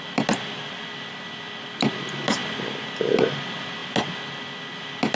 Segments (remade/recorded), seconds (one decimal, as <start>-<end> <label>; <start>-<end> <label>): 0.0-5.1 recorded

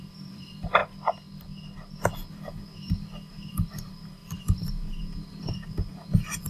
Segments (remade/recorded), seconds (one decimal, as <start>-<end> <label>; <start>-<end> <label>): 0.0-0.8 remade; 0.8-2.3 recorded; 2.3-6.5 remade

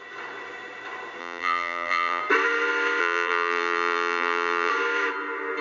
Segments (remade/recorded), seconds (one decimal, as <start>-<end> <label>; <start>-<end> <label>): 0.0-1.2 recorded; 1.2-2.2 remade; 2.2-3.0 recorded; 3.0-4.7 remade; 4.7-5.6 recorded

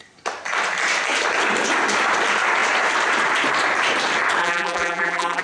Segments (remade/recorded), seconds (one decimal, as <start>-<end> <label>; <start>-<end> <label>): 0.0-4.4 recorded; 4.4-5.4 remade

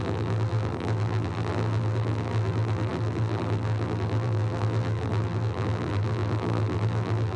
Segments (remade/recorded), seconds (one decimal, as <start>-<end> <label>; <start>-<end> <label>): 0.0-7.4 remade